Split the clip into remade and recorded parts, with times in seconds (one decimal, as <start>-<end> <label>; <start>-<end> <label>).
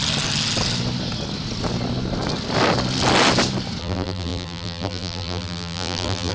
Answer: 0.0-3.8 recorded; 3.8-6.3 remade